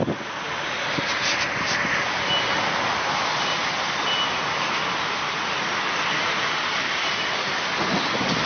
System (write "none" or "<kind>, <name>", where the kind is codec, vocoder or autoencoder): none